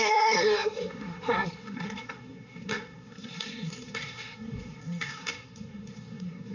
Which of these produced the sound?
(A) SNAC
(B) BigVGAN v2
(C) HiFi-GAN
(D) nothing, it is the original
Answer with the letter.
A